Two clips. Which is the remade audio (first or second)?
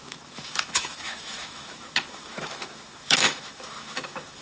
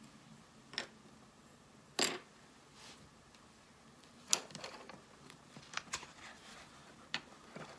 first